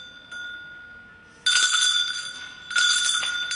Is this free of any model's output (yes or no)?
yes